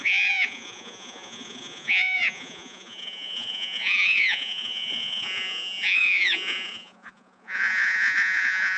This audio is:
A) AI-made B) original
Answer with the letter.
A